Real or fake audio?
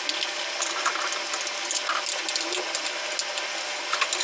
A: real